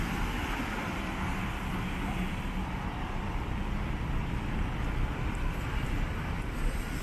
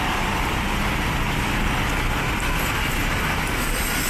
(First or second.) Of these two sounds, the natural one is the second